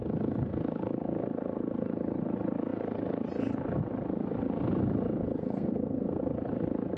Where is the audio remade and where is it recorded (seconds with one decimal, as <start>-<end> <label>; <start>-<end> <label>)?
0.0-5.4 recorded; 5.4-6.2 remade; 6.2-7.0 recorded